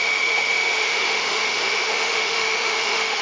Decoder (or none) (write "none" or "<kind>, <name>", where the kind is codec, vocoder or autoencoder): autoencoder, DAC-VAE